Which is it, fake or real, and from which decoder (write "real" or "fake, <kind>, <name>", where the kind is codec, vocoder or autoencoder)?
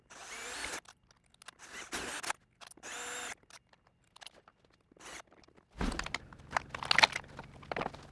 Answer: real